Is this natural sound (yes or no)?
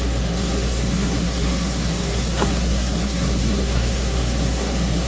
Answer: no